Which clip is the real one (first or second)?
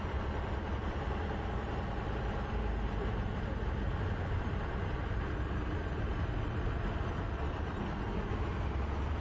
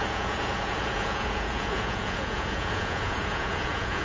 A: first